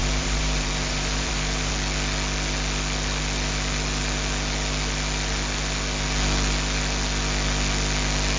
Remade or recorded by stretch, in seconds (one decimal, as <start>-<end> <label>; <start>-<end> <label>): 0.0-1.7 remade; 1.7-8.4 recorded